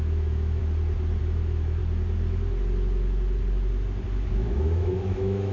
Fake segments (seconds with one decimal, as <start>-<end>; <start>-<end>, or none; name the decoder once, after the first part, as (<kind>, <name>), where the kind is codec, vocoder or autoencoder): 0.0-0.6 (autoencoder, DAC-VAE); 1.2-1.8; 4.3-5.5